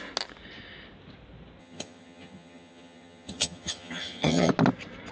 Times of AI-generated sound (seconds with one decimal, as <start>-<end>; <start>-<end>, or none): 1.6-4.5